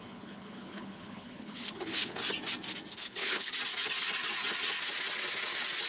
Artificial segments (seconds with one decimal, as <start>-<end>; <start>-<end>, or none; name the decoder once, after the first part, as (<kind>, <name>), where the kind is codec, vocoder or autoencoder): 0.0-2.2 (codec, HILCodec); 2.9-3.5